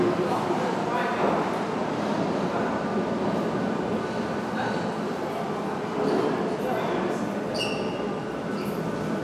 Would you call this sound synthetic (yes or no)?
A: no